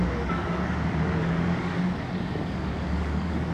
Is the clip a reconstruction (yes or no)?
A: yes